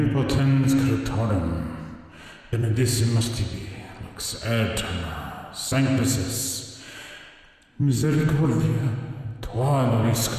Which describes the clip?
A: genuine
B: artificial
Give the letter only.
A